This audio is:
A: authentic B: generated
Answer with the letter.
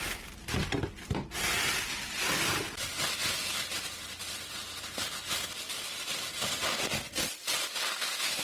A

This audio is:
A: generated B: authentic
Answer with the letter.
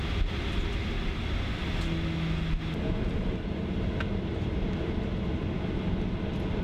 B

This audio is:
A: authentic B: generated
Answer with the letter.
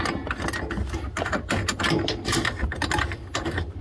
A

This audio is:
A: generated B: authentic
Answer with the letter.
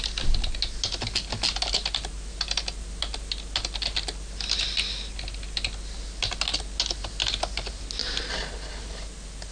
B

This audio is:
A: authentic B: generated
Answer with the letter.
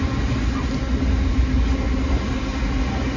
A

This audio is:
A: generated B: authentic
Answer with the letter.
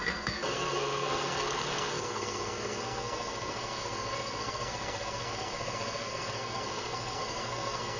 A